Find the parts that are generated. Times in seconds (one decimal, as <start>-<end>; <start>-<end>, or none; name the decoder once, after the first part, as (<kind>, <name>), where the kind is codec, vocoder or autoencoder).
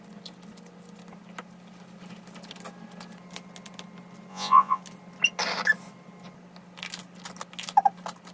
4.3-4.8 (vocoder, Vocos)